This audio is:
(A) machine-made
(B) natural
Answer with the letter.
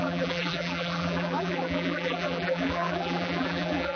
A